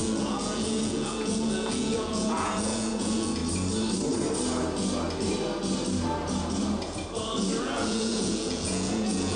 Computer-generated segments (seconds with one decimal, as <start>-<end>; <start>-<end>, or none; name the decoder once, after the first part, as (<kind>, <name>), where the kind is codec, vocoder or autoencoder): 0.0-3.4 (vocoder, Vocos); 7.6-9.4